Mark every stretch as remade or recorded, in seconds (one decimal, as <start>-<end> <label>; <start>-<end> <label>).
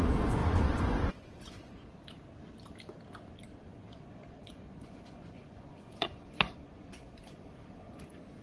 0.0-1.8 remade; 1.8-3.6 recorded; 3.6-8.4 remade